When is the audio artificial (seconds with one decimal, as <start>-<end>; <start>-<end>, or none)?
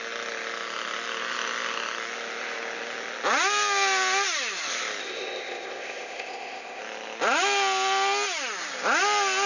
5.0-6.8